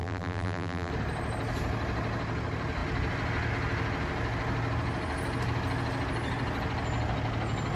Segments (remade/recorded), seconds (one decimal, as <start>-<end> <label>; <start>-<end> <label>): 0.0-0.9 remade; 0.9-7.8 recorded